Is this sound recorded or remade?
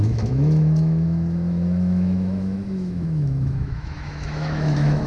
remade